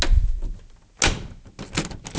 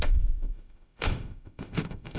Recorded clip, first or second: first